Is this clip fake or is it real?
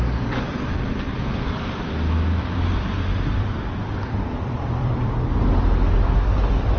fake